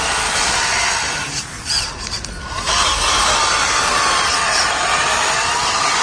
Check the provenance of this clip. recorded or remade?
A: recorded